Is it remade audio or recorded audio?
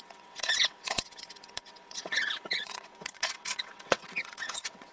remade